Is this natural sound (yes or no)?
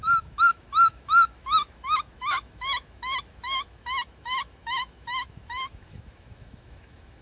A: no